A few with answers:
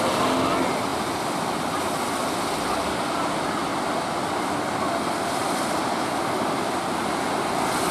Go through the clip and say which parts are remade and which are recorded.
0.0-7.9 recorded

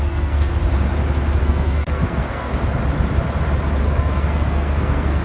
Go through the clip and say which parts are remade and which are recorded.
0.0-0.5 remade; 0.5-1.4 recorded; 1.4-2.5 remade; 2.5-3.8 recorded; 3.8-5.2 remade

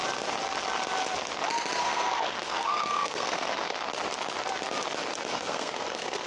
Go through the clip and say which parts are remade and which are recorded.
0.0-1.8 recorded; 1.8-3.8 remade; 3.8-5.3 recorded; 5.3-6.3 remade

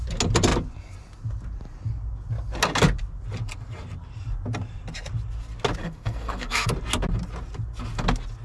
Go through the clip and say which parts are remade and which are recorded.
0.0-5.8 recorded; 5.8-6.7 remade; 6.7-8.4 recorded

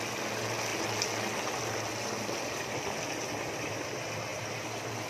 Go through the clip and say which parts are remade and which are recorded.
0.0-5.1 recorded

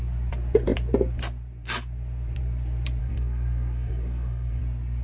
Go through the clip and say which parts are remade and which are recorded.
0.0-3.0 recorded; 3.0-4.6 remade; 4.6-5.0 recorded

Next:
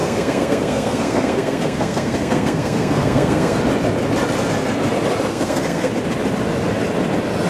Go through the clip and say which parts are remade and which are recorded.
0.0-3.6 remade; 3.6-5.3 recorded; 5.3-5.9 remade; 5.9-7.5 recorded

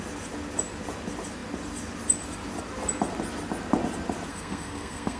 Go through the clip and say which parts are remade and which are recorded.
0.0-4.3 recorded; 4.3-5.2 remade